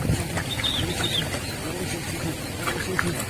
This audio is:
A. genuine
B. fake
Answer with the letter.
A